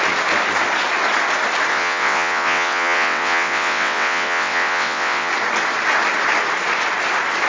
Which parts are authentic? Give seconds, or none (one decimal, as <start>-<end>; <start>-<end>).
0.0-1.7; 5.3-7.5